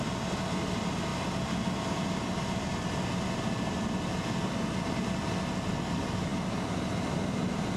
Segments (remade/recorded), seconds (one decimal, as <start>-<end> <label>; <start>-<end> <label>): 0.0-7.8 recorded